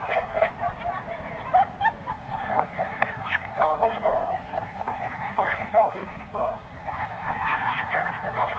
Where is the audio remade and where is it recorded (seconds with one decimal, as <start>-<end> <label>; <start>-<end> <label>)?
0.0-0.5 remade; 0.5-2.1 recorded; 2.1-8.6 remade